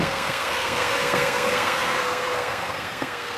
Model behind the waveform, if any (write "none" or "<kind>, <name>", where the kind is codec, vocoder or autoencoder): codec, SNAC